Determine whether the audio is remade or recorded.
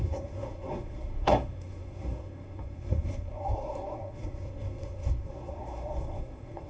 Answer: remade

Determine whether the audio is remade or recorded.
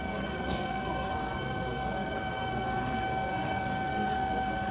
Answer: remade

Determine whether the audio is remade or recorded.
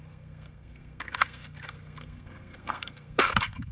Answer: remade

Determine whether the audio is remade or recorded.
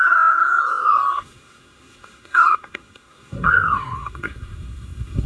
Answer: remade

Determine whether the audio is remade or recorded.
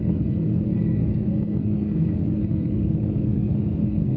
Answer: remade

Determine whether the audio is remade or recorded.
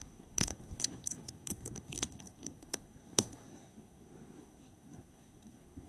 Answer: remade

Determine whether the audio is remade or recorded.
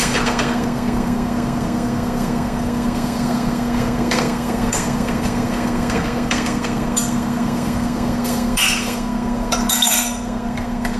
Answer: remade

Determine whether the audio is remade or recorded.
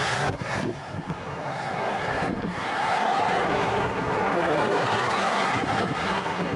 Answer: remade